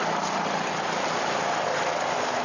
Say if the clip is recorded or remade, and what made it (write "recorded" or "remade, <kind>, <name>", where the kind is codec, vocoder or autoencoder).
recorded